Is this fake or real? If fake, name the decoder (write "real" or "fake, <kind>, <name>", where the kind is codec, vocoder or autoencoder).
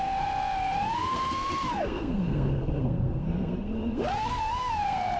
fake, codec, SNAC